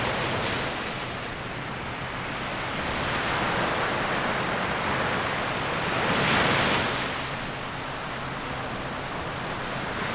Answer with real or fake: real